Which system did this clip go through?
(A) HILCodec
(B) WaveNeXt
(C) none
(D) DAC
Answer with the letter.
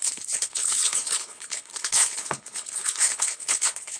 A